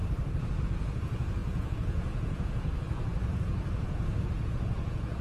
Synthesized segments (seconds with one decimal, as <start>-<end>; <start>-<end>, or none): 0.6-5.2